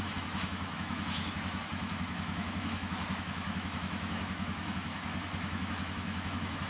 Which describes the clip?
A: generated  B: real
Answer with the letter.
A